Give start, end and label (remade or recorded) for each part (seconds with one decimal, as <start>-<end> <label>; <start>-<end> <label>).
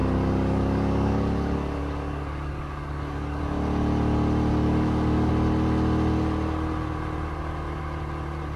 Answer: 0.0-3.4 remade; 3.4-4.5 recorded; 4.5-5.3 remade; 5.3-8.6 recorded